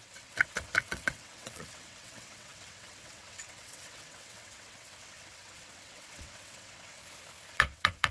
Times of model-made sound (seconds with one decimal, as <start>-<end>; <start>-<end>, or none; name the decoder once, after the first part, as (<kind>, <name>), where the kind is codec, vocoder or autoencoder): 0.0-7.0 (vocoder, WaveNeXt); 7.5-8.1